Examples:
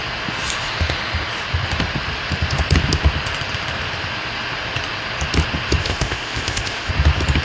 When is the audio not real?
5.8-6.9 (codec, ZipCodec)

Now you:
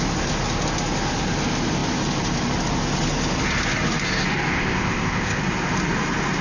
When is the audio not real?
4.5-5.4 (codec, ZipCodec)

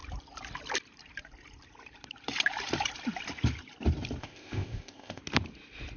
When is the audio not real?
4.2-5.2 (codec, ZipCodec)

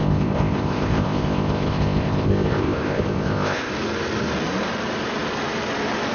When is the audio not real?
0.0-3.7 (codec, ZipCodec)

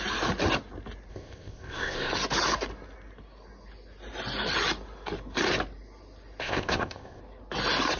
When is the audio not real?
1.1-2.1 (codec, ZipCodec); 6.4-7.2